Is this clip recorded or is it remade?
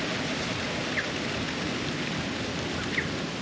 recorded